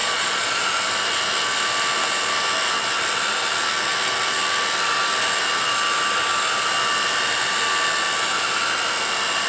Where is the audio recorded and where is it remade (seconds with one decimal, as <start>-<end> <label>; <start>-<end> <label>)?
0.0-0.6 remade; 0.6-9.5 recorded